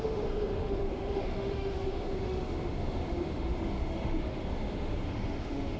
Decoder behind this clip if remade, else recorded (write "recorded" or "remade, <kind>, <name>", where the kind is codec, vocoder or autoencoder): remade, autoencoder, DAC-VAE